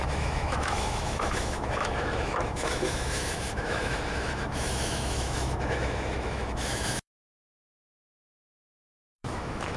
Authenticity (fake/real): fake